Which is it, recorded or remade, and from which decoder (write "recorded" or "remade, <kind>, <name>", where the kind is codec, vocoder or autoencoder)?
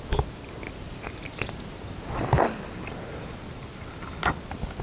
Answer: recorded